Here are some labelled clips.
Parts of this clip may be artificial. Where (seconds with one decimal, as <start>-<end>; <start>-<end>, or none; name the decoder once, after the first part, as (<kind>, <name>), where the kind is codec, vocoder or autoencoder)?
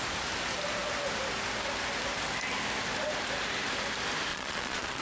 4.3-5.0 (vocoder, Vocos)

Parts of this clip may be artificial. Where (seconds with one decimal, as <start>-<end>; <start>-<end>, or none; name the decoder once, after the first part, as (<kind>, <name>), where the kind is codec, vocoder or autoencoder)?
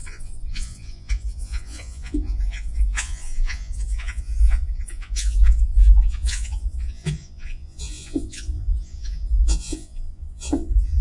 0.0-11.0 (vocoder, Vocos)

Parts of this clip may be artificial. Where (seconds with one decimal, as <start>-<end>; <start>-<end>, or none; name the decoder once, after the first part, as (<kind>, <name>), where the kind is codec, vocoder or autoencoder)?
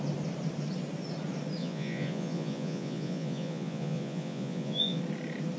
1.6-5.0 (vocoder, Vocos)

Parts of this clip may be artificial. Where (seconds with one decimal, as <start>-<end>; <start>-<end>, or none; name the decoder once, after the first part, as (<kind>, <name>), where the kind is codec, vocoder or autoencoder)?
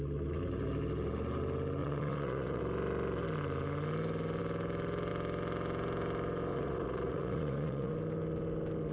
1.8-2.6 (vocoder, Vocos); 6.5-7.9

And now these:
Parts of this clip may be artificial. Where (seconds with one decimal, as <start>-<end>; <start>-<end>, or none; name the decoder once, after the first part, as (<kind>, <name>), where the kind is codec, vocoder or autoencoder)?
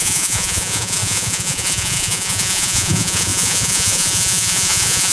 0.0-5.1 (vocoder, Vocos)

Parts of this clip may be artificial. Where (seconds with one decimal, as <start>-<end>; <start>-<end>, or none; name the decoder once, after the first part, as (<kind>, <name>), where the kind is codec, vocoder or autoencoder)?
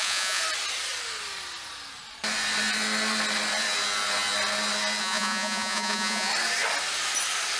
0.0-0.4 (vocoder, Vocos); 5.0-6.3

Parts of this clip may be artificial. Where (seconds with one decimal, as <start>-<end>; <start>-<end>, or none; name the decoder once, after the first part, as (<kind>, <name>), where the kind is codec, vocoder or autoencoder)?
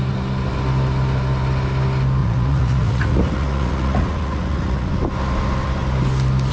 2.2-4.9 (vocoder, Vocos)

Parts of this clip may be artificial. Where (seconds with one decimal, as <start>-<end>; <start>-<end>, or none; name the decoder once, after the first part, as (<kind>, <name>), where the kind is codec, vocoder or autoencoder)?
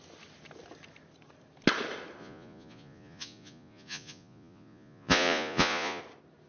2.2-6.0 (vocoder, Vocos)